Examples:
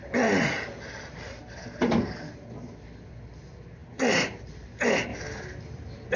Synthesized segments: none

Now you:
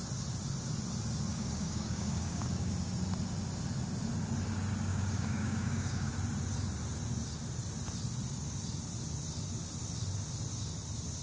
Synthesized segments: 1.3-2.7 (codec, DAC); 4.9-6.1

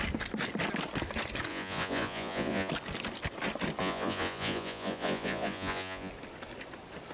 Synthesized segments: 1.5-2.7 (vocoder, Vocos); 3.8-6.1

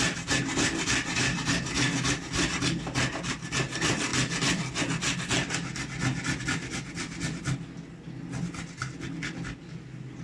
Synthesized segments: none